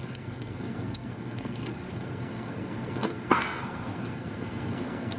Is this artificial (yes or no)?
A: yes